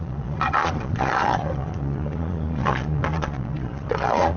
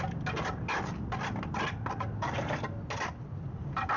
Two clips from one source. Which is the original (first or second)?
second